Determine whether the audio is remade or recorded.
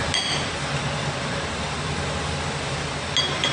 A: recorded